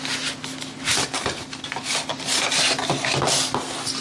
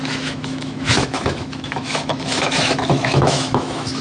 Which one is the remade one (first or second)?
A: second